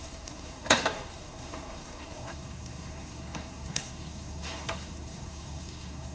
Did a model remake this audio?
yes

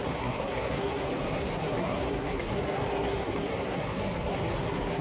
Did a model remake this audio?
yes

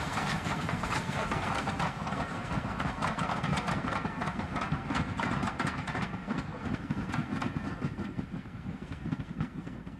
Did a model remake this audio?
yes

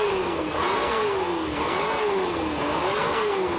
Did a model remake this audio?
yes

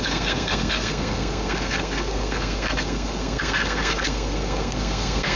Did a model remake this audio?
yes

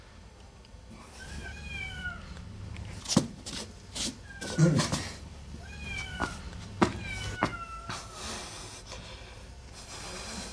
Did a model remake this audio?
no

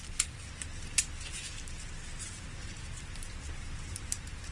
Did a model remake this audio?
no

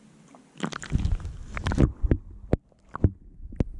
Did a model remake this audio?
no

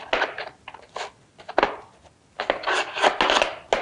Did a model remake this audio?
no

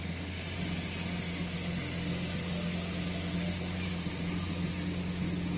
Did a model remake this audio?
no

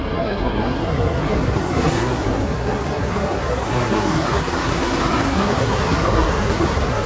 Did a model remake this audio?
yes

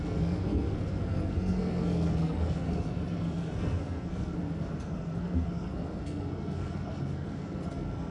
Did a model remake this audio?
yes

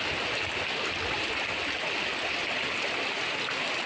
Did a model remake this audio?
no